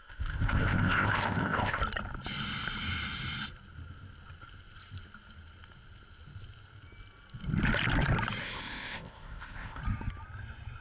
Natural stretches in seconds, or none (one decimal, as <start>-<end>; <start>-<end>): 1.8-8.4; 9.8-10.8